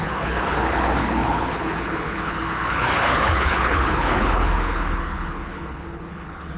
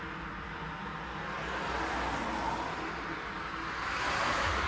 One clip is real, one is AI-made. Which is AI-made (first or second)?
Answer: first